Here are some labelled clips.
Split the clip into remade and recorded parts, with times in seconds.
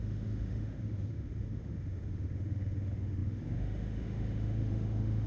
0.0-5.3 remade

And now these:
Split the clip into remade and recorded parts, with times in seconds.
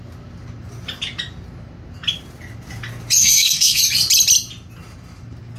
0.0-3.2 recorded; 3.2-3.8 remade; 3.8-5.6 recorded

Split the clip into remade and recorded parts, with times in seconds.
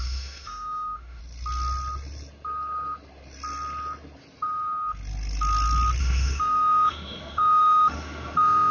0.0-1.2 remade; 1.2-6.0 recorded; 6.0-8.7 remade